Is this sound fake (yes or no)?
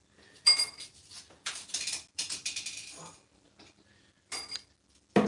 no